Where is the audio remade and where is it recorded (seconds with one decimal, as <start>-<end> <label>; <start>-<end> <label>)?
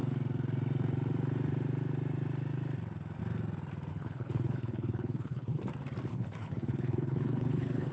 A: 0.0-3.9 recorded; 3.9-5.6 remade; 5.6-6.1 recorded; 6.1-7.9 remade